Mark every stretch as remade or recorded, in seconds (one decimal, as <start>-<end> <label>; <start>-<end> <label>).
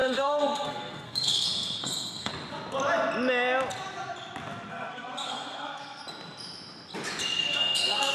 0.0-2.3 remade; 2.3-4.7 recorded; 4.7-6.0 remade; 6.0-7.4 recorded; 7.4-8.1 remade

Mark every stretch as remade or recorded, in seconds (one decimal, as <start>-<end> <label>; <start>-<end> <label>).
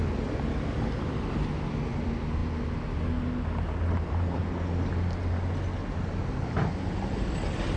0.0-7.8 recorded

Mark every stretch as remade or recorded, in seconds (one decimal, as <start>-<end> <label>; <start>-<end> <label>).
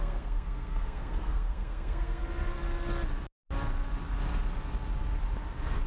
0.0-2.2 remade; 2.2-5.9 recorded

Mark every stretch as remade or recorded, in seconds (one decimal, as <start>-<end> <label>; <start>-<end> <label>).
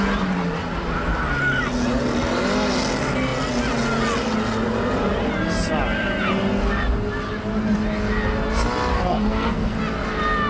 0.0-8.9 recorded; 8.9-9.8 remade; 9.8-10.5 recorded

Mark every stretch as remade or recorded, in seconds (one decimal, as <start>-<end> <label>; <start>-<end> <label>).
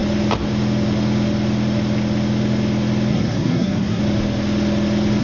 0.0-3.1 recorded; 3.1-4.0 remade; 4.0-5.2 recorded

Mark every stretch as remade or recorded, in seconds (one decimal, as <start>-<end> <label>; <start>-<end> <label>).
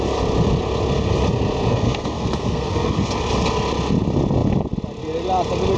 0.0-1.7 recorded; 1.7-3.1 remade; 3.1-5.8 recorded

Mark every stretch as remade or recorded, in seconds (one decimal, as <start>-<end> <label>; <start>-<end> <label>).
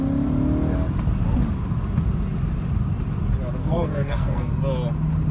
0.0-3.6 recorded; 3.6-4.5 remade; 4.5-5.3 recorded